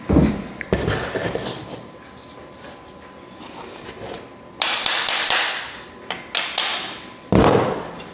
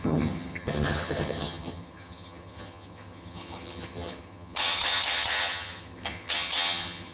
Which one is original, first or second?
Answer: first